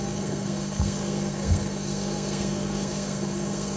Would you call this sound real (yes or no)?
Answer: no